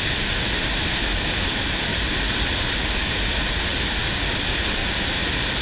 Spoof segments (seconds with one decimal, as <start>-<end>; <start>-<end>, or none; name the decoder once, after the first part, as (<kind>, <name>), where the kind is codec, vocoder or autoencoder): none